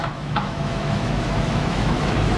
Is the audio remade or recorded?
remade